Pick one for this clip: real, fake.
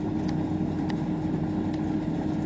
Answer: real